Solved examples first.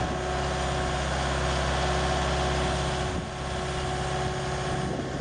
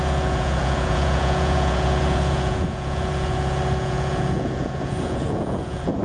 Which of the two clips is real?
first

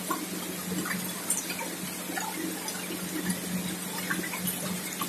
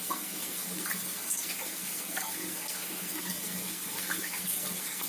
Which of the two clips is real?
first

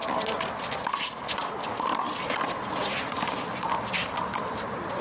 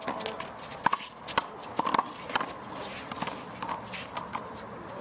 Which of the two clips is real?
second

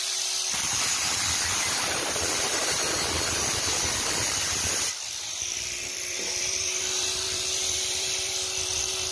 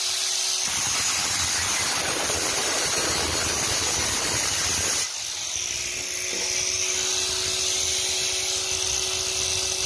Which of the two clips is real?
second